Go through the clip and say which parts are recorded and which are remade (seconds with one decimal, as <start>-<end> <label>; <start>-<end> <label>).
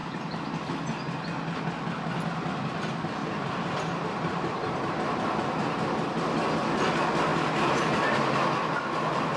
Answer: 0.0-0.6 remade; 0.6-3.2 recorded; 3.2-4.9 remade; 4.9-7.3 recorded; 7.3-7.8 remade; 7.8-9.4 recorded